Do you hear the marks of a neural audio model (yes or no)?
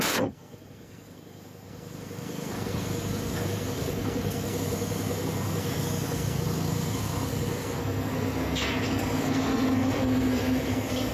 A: yes